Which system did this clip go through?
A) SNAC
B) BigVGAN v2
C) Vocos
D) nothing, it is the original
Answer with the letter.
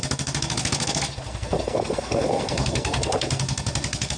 A